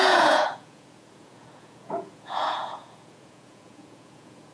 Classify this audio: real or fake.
fake